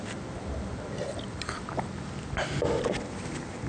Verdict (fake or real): real